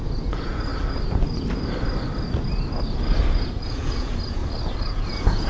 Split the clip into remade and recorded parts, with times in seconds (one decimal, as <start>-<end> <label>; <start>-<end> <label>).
0.0-0.7 remade; 0.7-3.6 recorded; 3.6-4.4 remade; 4.4-4.9 recorded; 4.9-5.5 remade